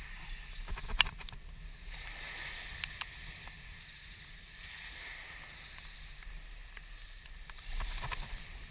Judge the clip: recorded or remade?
recorded